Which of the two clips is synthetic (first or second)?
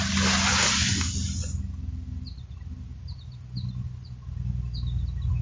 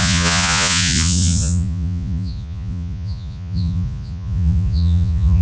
second